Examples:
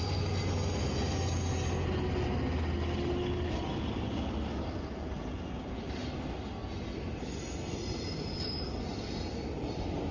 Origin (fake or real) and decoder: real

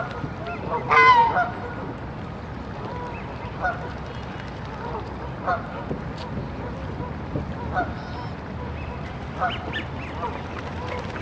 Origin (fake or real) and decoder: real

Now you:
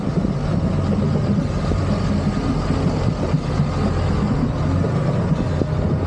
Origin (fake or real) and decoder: real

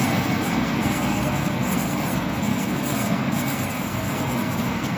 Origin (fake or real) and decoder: fake, codec, SNAC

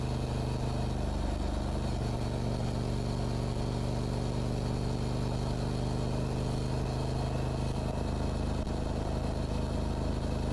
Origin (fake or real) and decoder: real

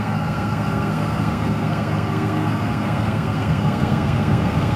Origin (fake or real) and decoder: fake, codec, SNAC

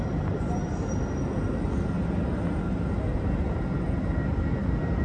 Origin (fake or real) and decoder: real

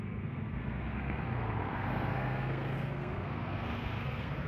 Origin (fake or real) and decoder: fake, codec, SNAC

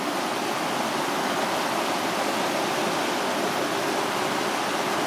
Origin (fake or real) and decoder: real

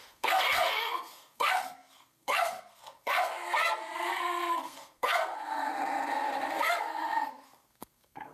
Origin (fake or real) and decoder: fake, codec, SNAC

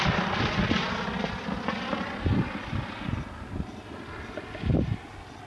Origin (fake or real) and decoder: real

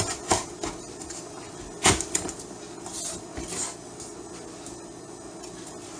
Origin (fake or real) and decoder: real